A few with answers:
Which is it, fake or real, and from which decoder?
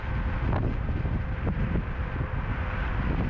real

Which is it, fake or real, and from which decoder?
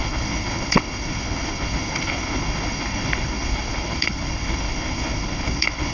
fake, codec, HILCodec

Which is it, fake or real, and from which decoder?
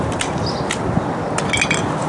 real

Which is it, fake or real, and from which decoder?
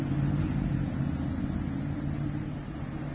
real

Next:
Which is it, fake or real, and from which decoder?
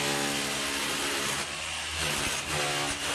real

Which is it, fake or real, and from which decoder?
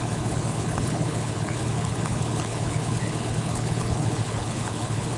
fake, codec, HILCodec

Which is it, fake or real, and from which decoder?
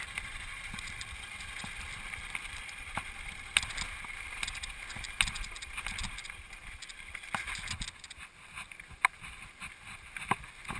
real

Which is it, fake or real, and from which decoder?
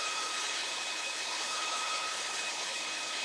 fake, codec, HILCodec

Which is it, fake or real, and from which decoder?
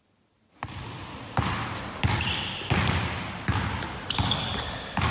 real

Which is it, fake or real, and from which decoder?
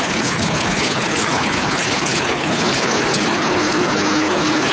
fake, codec, HILCodec